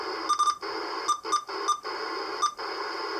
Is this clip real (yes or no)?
yes